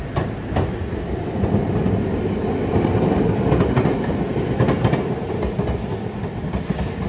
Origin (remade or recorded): recorded